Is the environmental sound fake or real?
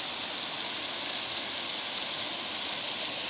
real